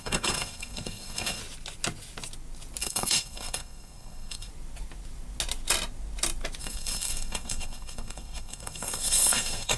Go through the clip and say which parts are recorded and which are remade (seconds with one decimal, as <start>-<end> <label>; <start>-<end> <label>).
0.0-1.4 remade; 1.4-2.8 recorded; 2.8-4.5 remade; 4.5-6.6 recorded; 6.6-9.8 remade